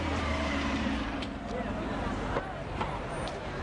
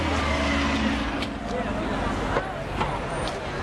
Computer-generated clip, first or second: first